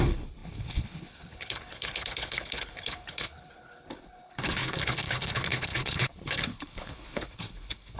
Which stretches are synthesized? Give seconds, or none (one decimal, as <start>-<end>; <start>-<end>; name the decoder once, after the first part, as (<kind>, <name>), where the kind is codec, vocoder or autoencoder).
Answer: 0.0-8.0 (codec, HILCodec)